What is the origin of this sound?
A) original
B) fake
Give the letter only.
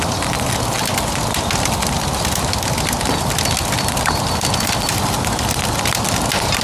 A